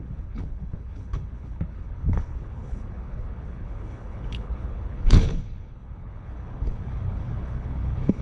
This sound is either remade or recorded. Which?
remade